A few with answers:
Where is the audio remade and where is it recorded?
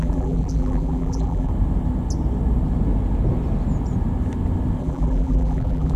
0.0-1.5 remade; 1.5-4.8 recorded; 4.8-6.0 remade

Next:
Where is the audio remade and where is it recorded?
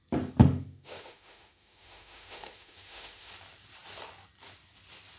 0.0-0.4 recorded; 0.4-3.3 remade; 3.3-5.2 recorded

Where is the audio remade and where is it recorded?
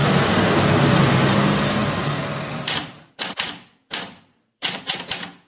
0.0-0.7 remade; 0.7-1.8 recorded; 1.8-4.8 remade; 4.8-5.5 recorded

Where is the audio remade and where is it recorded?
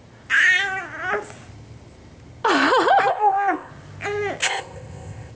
0.0-3.1 recorded; 3.1-3.7 remade; 3.7-4.4 recorded; 4.4-5.3 remade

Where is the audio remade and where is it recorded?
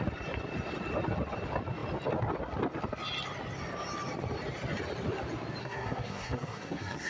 0.0-5.6 recorded; 5.6-7.1 remade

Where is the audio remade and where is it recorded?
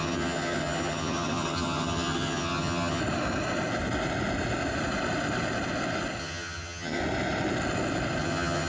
0.0-3.0 remade; 3.0-6.2 recorded; 6.2-7.0 remade; 7.0-8.2 recorded; 8.2-8.7 remade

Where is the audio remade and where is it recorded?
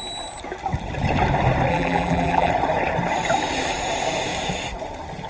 0.0-1.7 recorded; 1.7-2.5 remade; 2.5-5.3 recorded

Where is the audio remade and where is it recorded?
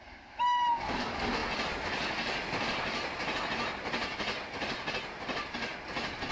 0.0-6.3 recorded